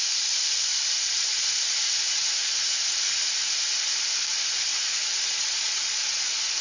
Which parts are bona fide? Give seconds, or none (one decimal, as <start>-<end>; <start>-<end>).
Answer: 0.0-0.7; 3.5-4.7